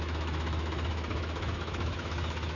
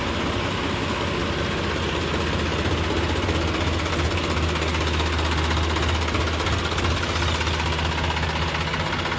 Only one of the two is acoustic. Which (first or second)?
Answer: second